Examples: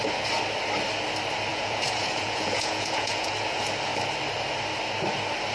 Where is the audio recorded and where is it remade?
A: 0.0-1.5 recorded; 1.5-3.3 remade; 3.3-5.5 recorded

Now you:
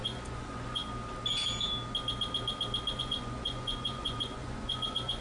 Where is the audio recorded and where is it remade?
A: 0.0-0.8 remade; 0.8-3.0 recorded; 3.0-5.2 remade

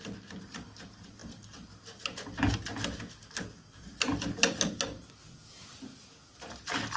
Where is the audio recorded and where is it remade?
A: 0.0-7.0 recorded

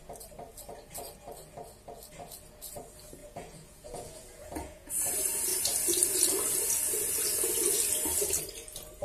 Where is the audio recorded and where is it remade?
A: 0.0-3.2 recorded; 3.2-4.9 remade; 4.9-9.0 recorded

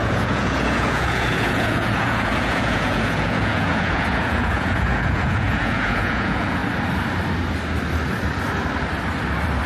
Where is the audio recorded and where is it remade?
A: 0.0-6.6 remade; 6.6-9.7 recorded